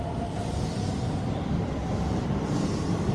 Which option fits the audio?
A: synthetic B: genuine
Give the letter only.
A